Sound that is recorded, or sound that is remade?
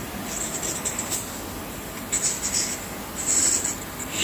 recorded